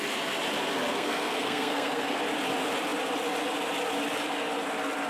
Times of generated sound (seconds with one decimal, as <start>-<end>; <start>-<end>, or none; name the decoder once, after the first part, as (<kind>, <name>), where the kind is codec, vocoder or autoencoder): 0.9-2.2 (codec, SNAC)